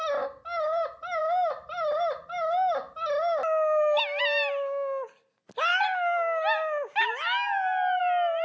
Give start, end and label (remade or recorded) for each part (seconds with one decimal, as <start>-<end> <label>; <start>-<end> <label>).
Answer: 0.0-8.4 recorded